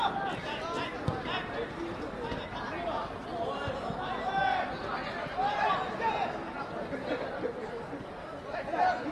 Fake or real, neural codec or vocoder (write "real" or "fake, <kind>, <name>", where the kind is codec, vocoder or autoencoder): real